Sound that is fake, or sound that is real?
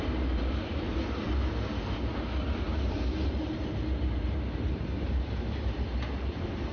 fake